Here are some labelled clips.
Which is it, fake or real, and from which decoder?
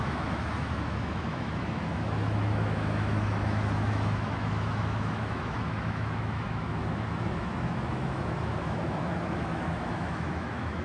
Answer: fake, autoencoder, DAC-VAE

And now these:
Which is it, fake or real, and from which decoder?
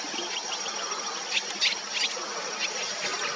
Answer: real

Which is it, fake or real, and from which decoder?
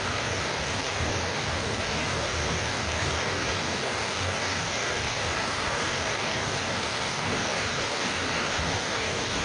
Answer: fake, codec, DAC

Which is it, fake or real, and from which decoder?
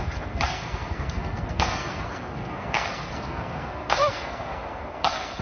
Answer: fake, codec, SNAC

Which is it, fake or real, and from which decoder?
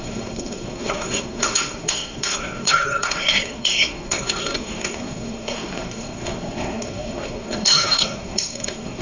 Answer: fake, codec, SNAC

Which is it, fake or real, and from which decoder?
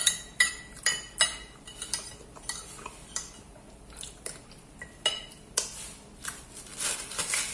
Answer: real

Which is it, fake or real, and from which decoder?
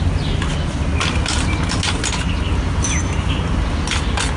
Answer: real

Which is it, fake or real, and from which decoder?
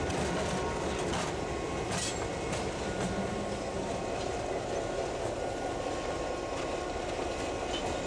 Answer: real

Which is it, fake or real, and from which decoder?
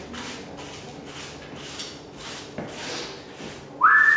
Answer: real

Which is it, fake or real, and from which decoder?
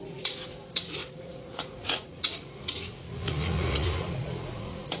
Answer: fake, vocoder, Vocos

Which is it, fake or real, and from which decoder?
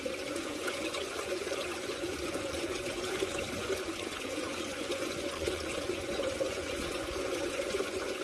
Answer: fake, vocoder, Vocos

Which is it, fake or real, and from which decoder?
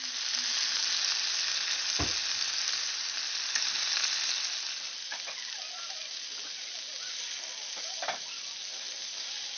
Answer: real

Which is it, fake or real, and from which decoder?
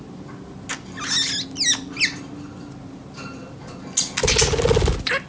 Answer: real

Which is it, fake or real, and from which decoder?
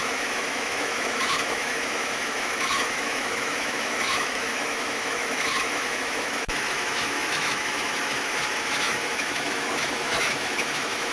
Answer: fake, autoencoder, DAC-VAE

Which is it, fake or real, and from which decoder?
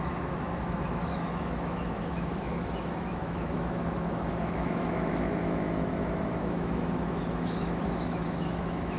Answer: fake, autoencoder, DAC-VAE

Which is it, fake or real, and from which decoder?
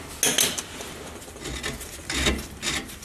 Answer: real